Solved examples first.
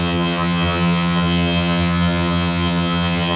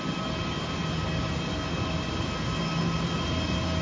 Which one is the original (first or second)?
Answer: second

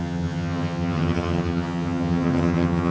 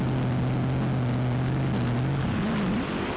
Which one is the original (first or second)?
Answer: second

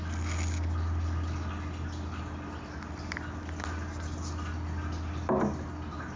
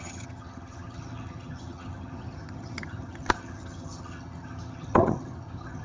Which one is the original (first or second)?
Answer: first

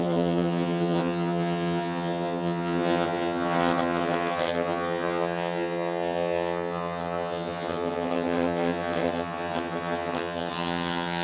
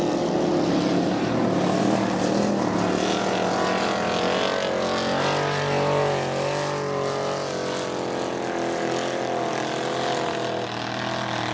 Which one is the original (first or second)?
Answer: second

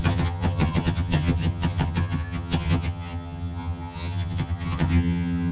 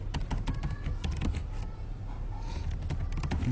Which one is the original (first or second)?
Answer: second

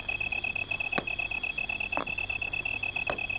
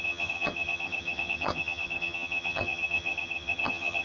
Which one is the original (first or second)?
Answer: first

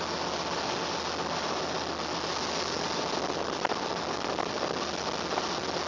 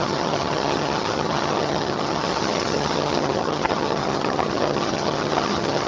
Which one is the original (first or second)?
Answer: first